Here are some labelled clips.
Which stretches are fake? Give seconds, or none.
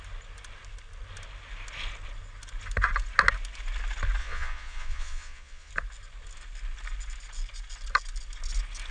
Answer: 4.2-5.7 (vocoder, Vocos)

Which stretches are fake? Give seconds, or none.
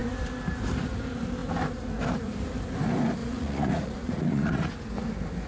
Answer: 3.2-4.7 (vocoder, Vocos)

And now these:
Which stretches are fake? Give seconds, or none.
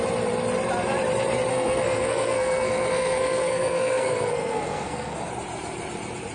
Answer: 1.5-5.3 (codec, SNAC)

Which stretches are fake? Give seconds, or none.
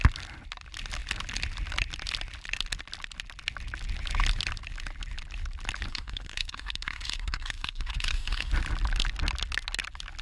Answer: 5.9-8.5 (codec, SNAC)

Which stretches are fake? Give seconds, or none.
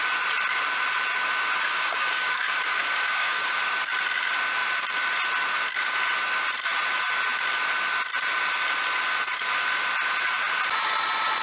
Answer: 1.7-3.6 (codec, DAC)